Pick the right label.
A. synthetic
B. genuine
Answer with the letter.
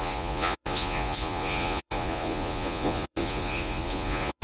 A